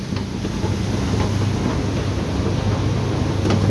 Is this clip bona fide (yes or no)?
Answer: yes